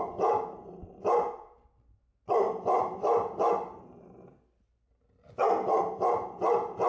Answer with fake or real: real